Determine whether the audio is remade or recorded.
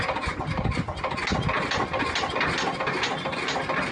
recorded